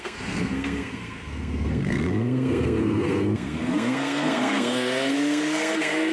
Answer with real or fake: fake